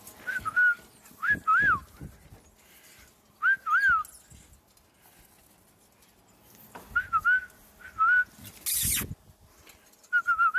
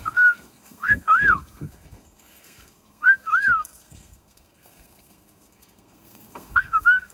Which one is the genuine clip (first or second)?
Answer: first